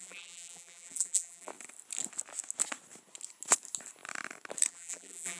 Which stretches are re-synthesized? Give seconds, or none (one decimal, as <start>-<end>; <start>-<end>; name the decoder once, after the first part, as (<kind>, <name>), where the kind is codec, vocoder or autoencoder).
0.0-1.5 (vocoder, BigVGAN v2); 4.7-5.4